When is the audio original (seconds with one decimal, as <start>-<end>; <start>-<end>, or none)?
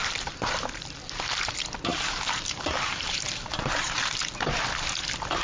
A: 0.0-1.9; 4.2-5.4